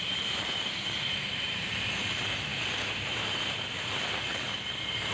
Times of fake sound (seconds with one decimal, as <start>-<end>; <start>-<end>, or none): 0.0-5.1

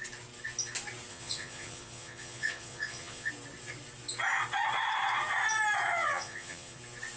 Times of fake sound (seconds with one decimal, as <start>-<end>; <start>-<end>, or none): 1.1-3.3; 6.0-6.8

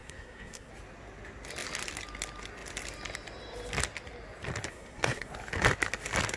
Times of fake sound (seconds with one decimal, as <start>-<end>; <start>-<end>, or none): 0.0-0.7; 4.7-5.3

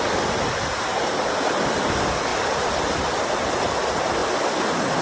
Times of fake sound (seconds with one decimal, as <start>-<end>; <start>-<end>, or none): 0.9-1.7; 2.3-3.2; 4.2-5.0

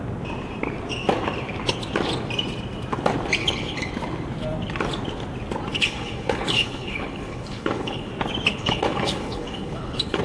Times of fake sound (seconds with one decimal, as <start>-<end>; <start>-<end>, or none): 3.4-3.9; 5.7-8.1; 8.5-10.2

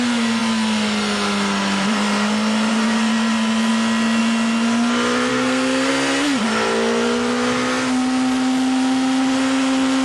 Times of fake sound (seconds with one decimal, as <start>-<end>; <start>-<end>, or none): 5.3-5.9

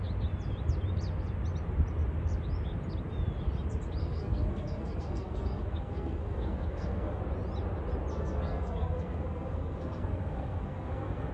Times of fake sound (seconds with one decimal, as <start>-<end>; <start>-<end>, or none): 4.0-7.2; 8.1-11.3